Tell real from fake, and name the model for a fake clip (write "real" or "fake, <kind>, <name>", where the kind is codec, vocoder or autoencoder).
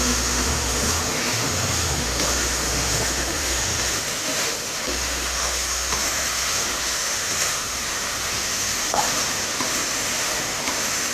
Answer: fake, autoencoder, DAC-VAE